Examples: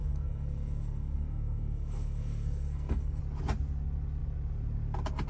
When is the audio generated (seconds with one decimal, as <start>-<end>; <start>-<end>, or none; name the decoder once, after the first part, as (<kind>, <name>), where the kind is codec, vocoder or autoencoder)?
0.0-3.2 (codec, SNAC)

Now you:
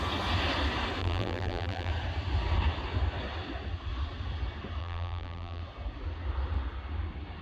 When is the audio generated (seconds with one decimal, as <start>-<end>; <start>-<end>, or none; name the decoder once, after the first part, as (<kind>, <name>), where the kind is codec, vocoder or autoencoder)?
1.0-1.9 (vocoder, BigVGAN v2); 4.8-5.6

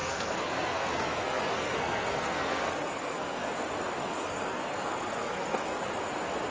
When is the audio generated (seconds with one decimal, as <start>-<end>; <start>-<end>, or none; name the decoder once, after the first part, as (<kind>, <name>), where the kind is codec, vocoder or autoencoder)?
0.0-3.5 (codec, SNAC); 4.0-5.8

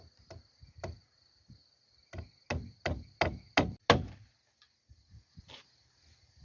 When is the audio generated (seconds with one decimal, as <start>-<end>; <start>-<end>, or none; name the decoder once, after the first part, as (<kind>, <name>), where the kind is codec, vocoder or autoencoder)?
none

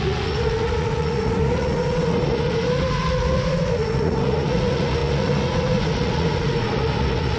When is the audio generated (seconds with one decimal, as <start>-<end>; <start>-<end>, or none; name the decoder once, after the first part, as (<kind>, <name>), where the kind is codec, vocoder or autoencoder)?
0.0-7.4 (vocoder, Vocos)

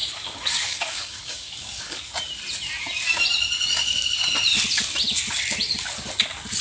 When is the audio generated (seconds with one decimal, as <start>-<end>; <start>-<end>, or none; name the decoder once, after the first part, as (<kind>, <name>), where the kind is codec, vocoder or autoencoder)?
0.0-2.0 (codec, DAC)

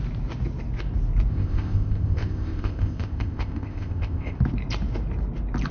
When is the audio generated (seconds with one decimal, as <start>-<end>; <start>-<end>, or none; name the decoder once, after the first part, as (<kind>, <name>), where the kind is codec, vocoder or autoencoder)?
1.3-4.4 (codec, ZipCodec)

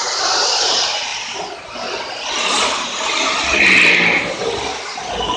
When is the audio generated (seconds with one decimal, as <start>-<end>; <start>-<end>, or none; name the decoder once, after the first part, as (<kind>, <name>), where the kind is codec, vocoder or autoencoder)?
none